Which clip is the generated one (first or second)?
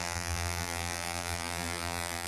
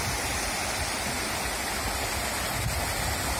first